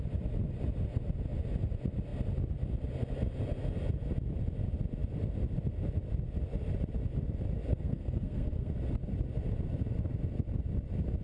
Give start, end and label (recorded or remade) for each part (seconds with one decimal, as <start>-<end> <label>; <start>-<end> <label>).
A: 0.0-7.7 recorded; 7.7-8.7 remade; 8.7-11.2 recorded